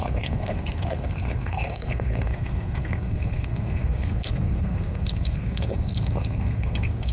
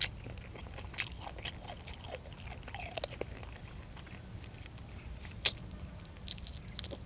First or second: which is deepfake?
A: first